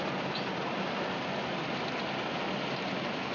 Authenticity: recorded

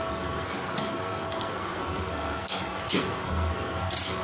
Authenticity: remade